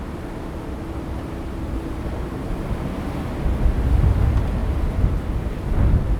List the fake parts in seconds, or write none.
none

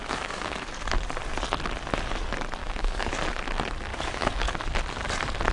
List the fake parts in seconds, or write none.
0.0-0.7 (codec, DAC); 2.6-3.1; 3.9-4.6

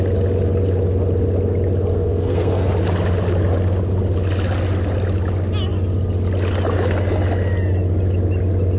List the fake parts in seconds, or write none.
1.9-2.7 (codec, SNAC)

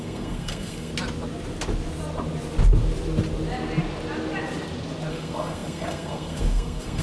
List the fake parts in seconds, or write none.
0.0-0.9 (codec, SNAC); 5.1-7.0

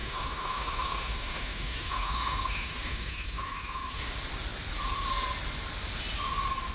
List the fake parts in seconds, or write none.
0.0-4.0 (autoencoder, DAC-VAE)